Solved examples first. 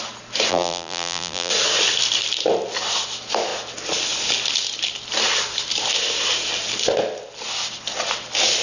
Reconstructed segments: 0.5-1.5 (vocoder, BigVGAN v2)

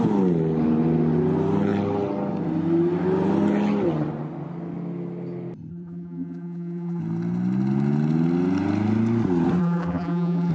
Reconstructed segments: 5.7-7.0 (vocoder, BigVGAN v2); 9.6-10.5

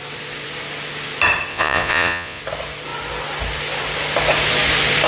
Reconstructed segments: 1.5-2.4 (vocoder, Vocos)